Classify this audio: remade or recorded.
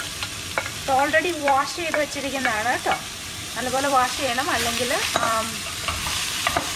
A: remade